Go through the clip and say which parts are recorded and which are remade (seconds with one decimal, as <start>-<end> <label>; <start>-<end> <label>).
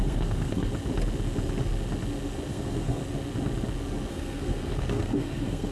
0.0-0.7 remade; 0.7-2.5 recorded; 2.5-3.0 remade; 3.0-4.1 recorded; 4.1-5.7 remade